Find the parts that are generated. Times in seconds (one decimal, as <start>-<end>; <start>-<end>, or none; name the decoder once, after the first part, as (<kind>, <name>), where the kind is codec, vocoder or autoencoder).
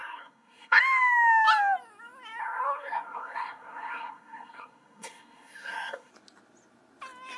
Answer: 0.0-0.8 (codec, SNAC); 2.4-6.1